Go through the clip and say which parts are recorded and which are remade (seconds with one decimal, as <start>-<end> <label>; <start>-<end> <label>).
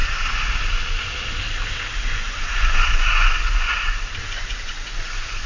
0.0-2.0 recorded; 2.0-3.7 remade; 3.7-4.2 recorded; 4.2-5.5 remade